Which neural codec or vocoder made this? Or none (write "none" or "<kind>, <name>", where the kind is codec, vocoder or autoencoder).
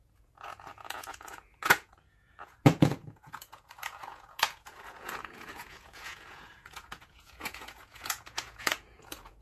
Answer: vocoder, Vocos